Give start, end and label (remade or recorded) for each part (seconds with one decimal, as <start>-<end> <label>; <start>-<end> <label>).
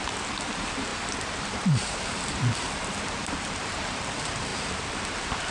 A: 0.0-0.9 remade; 0.9-1.6 recorded; 1.6-5.5 remade